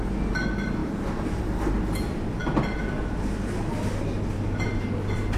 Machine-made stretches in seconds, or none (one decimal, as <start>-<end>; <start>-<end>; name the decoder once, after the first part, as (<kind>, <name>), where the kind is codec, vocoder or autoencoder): none